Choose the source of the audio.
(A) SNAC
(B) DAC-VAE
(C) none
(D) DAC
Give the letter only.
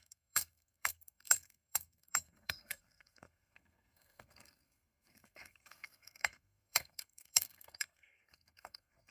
A